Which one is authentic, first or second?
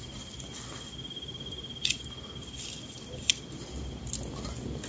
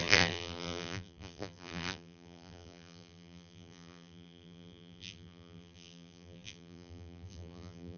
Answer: first